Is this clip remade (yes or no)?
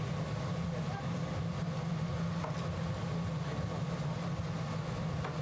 no